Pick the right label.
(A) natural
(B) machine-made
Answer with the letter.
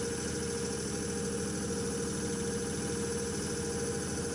A